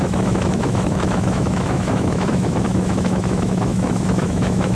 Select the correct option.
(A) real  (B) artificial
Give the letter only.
B